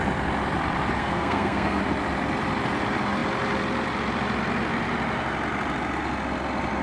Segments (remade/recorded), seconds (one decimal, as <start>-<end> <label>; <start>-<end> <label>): 0.0-1.0 recorded; 1.0-1.8 remade; 1.8-6.8 recorded